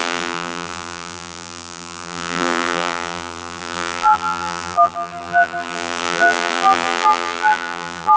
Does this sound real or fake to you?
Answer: fake